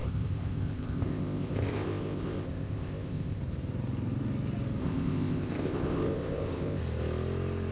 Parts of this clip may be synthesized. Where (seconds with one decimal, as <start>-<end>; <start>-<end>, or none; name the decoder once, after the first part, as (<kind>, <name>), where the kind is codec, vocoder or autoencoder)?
0.0-3.4 (codec, ZipCodec); 4.8-6.8